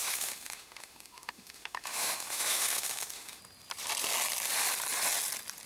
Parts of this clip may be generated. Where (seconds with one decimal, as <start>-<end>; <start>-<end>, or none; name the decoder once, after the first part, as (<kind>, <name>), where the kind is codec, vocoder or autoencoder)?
0.0-3.4 (autoencoder, DAC-VAE)

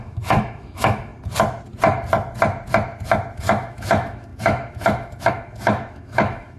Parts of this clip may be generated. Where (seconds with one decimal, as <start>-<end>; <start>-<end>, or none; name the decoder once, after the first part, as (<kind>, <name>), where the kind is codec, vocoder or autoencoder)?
0.0-1.1 (autoencoder, DAC-VAE); 3.4-6.6

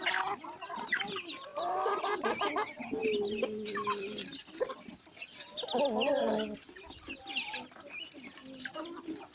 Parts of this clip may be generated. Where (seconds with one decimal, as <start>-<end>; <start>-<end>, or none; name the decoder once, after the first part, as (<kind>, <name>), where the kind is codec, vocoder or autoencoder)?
none

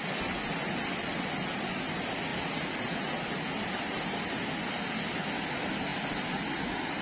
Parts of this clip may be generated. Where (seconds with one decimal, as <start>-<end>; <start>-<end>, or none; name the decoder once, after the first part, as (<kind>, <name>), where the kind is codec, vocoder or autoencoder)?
none

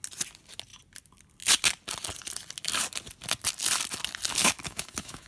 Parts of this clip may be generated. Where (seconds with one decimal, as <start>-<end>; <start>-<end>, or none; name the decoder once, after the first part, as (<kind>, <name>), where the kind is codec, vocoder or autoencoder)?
4.4-5.3 (autoencoder, DAC-VAE)

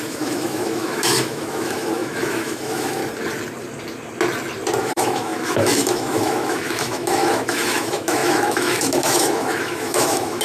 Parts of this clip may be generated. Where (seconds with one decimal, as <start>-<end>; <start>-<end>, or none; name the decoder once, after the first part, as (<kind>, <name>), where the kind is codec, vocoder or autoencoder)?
0.0-3.0 (autoencoder, DAC-VAE); 4.8-10.4

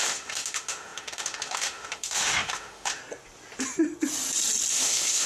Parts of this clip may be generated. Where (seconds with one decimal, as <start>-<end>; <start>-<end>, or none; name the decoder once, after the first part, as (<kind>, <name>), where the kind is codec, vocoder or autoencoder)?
0.0-3.0 (autoencoder, DAC-VAE); 4.7-5.3